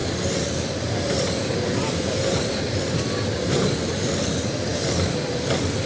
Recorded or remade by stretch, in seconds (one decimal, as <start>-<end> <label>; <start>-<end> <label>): 0.0-5.9 recorded